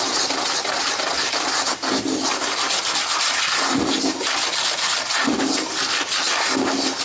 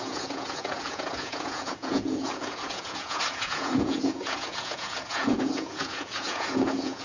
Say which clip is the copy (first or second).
second